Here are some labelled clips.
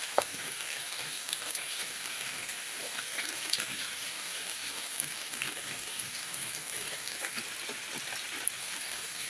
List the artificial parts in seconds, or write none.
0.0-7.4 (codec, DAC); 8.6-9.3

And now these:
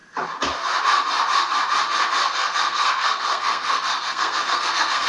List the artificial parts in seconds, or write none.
2.2-5.1 (codec, SNAC)

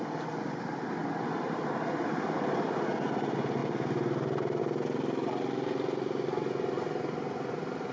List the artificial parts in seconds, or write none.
none

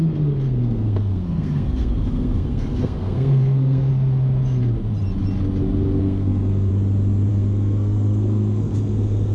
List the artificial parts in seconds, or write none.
0.0-3.9 (codec, SNAC); 6.0-6.7; 7.3-9.3

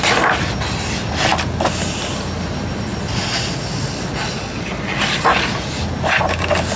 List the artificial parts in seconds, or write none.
none